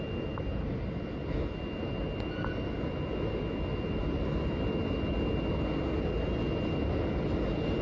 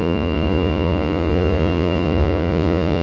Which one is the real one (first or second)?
first